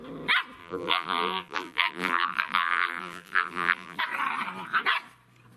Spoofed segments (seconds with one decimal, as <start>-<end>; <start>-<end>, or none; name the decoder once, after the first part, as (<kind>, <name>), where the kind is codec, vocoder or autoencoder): 0.6-4.0 (vocoder, BigVGAN v2)